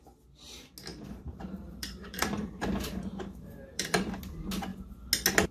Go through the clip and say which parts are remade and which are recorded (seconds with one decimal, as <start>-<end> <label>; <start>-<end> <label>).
0.0-0.9 recorded; 0.9-4.2 remade; 4.2-5.5 recorded